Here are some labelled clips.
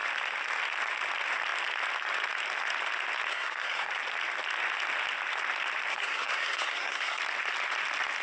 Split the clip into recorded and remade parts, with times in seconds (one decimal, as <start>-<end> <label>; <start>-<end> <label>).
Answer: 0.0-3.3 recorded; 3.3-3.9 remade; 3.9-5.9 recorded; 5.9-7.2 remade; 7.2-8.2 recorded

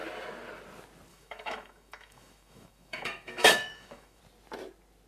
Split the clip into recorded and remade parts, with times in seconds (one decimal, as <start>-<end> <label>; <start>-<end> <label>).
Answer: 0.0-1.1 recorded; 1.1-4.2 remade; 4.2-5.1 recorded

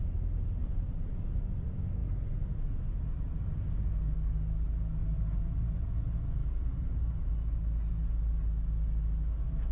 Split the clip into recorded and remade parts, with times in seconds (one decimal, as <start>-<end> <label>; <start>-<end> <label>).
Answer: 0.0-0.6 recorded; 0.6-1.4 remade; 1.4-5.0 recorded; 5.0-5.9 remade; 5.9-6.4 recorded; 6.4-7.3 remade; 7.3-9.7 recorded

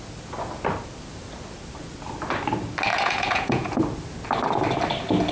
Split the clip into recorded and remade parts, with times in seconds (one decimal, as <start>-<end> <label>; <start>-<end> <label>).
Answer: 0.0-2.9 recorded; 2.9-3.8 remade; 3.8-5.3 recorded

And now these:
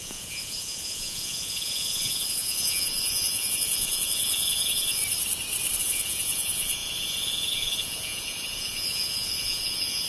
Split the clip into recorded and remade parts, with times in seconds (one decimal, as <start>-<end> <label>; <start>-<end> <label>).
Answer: 0.0-5.0 remade; 5.0-5.8 recorded; 5.8-10.1 remade